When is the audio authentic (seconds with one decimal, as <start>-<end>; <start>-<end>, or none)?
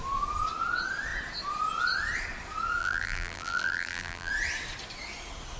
0.0-2.8; 4.3-5.6